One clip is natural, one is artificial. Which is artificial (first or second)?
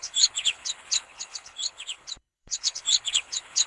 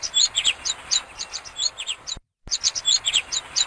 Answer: first